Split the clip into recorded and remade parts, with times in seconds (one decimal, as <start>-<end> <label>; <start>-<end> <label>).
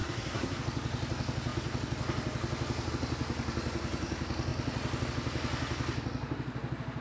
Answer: 0.0-0.6 remade; 0.6-7.0 recorded